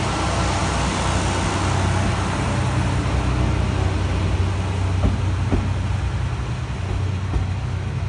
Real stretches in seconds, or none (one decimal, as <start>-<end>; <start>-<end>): 0.0-8.1